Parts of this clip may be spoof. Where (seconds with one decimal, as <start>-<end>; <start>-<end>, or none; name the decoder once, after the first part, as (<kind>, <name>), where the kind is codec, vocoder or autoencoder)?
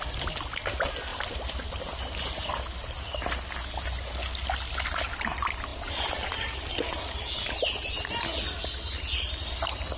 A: 1.1-2.0 (vocoder, BigVGAN v2); 5.7-7.2